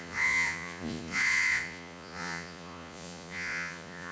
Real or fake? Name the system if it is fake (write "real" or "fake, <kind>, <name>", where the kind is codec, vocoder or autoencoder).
fake, vocoder, Vocos